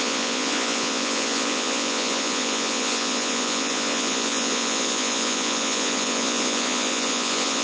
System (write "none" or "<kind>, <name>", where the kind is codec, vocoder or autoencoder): vocoder, Vocos